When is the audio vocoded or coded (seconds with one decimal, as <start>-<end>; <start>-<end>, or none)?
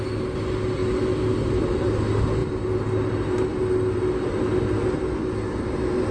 none